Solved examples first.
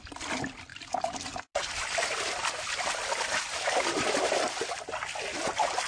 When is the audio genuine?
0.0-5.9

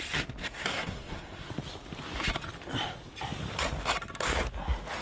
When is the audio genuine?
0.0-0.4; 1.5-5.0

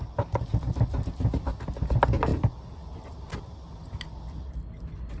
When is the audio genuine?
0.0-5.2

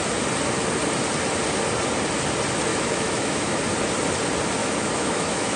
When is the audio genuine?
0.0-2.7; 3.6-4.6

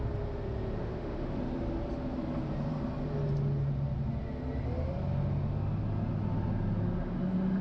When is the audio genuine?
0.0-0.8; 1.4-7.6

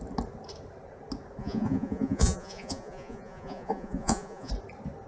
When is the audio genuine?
0.0-1.4; 4.5-5.1